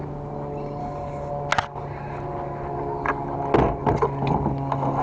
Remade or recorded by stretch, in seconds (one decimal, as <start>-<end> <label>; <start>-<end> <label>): 0.0-0.8 recorded; 0.8-1.3 remade; 1.3-5.0 recorded